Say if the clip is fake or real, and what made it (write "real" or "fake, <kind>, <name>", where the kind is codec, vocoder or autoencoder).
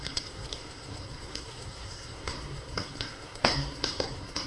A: fake, codec, SNAC